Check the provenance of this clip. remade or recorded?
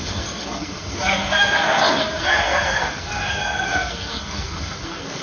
remade